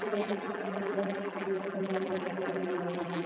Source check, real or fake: fake